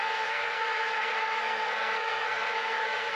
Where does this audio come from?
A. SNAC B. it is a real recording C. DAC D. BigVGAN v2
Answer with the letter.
A